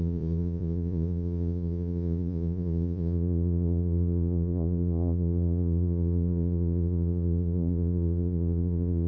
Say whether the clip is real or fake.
fake